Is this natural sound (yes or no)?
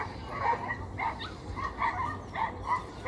yes